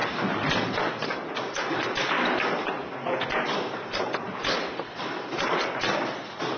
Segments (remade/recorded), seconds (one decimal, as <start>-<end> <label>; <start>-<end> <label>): 0.0-6.6 recorded